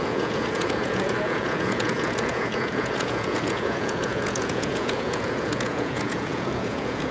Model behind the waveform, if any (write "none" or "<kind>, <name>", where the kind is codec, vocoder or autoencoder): vocoder, Vocos